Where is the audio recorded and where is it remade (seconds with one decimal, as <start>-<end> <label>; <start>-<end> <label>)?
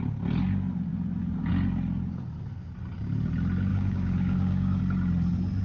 0.0-3.7 recorded; 3.7-4.8 remade; 4.8-5.6 recorded